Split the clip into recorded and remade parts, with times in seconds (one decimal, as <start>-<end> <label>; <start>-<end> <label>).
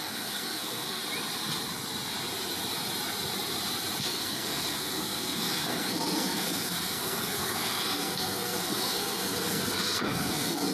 0.0-1.0 remade; 1.0-4.0 recorded; 4.0-10.7 remade